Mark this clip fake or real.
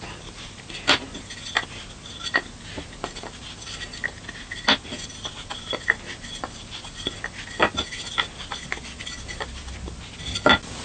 real